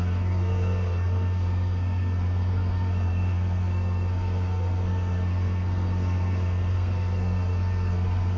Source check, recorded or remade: remade